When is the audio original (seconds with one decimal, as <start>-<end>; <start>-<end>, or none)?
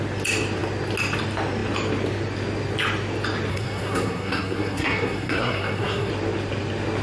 0.0-3.5; 6.1-7.0